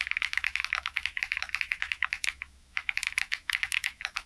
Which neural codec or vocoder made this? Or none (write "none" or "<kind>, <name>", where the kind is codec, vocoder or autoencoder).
autoencoder, DAC-VAE